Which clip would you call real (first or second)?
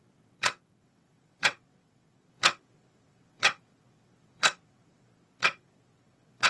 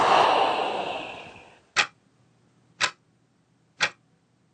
second